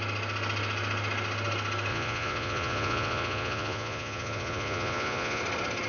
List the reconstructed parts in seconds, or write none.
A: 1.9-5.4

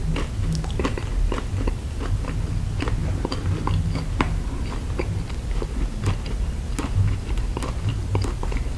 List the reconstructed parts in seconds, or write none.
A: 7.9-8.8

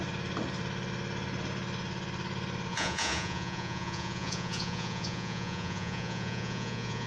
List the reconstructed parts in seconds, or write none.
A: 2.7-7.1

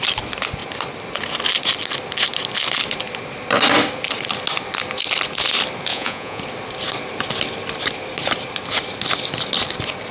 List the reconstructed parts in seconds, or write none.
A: 5.9-6.4

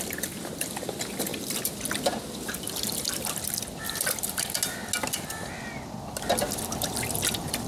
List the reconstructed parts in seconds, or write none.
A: none

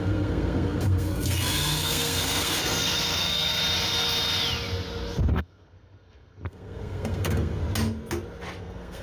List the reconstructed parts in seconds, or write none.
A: 0.0-3.6; 5.3-7.6; 8.6-9.0